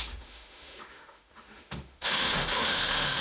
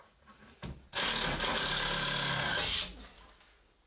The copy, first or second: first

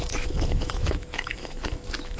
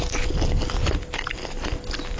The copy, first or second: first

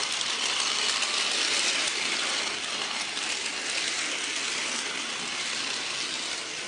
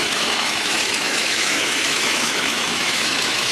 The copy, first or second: second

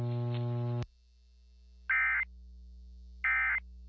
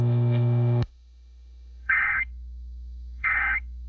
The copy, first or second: second